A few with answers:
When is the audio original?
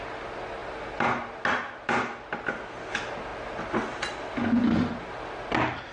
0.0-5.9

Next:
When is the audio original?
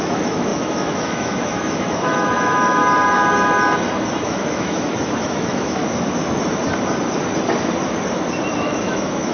2.8-4.2; 5.8-8.6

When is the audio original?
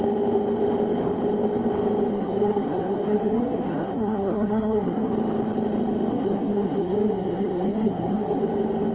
0.0-2.1; 5.1-6.1; 8.4-8.9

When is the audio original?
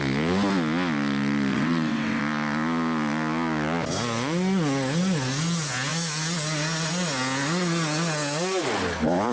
0.0-1.5; 2.2-9.3